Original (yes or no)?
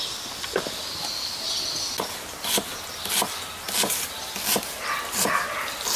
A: yes